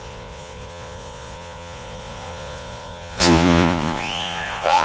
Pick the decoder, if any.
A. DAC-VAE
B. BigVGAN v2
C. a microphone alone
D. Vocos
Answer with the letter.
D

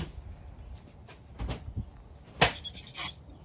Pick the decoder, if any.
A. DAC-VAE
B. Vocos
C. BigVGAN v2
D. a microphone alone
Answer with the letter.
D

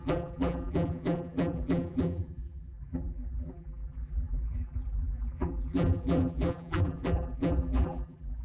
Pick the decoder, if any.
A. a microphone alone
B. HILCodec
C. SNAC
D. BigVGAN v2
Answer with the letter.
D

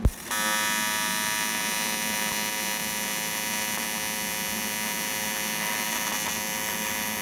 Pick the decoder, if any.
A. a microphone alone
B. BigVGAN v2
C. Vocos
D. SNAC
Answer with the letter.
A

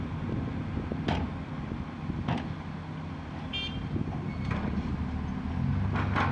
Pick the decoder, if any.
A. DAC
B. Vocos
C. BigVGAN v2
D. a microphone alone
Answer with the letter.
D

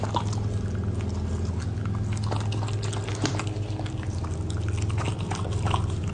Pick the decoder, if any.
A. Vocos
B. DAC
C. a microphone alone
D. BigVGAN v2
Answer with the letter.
C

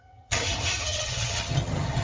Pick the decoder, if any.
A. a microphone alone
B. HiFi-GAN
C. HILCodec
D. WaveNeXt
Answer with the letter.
B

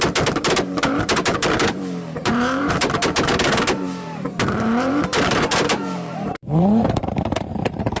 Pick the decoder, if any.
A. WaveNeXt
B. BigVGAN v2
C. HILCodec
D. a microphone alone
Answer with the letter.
B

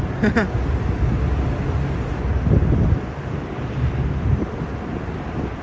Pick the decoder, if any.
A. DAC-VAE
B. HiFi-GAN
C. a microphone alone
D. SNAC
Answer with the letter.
C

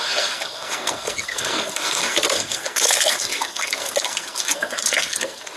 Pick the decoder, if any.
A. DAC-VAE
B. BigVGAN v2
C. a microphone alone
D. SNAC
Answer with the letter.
D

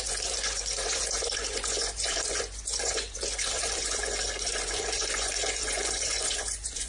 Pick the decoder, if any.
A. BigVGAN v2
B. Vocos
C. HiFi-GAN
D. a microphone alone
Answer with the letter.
B